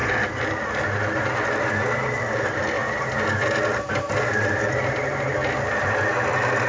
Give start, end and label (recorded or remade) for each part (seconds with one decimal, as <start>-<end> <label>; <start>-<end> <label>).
0.0-6.7 recorded